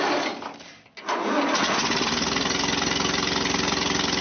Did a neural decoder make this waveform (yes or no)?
no